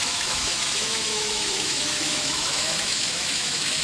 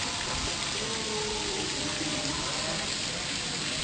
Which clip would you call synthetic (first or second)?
first